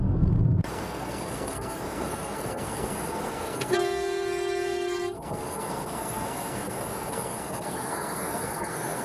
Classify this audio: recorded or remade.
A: remade